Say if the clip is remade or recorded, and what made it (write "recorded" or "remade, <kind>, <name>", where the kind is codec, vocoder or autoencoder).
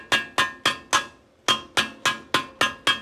recorded